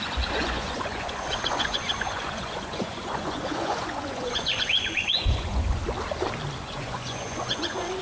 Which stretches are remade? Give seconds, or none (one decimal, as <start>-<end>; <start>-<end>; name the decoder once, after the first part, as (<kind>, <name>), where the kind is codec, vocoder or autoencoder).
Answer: 0.0-5.8 (vocoder, Vocos); 6.6-8.0